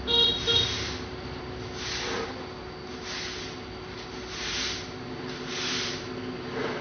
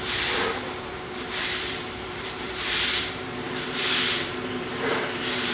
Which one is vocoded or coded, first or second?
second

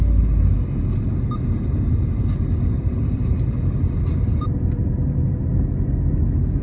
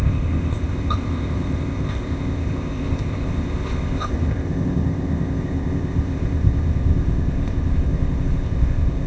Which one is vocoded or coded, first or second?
second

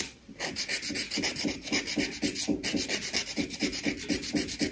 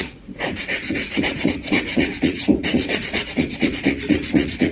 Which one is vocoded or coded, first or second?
second